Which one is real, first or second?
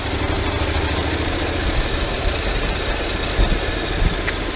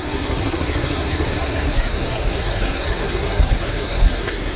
first